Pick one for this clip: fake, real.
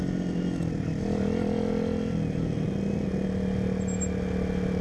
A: real